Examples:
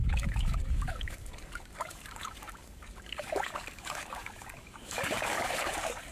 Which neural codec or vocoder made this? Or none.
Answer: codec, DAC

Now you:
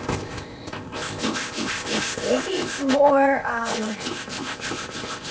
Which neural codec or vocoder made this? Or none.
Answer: codec, ZipCodec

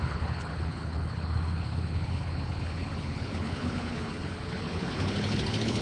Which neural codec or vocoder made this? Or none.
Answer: codec, HILCodec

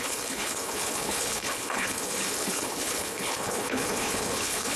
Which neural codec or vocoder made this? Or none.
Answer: codec, HILCodec